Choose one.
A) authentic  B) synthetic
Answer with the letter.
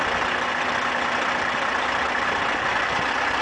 A